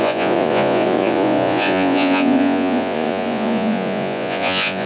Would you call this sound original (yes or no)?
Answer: no